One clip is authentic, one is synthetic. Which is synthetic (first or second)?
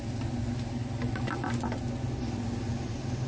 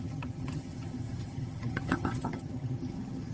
second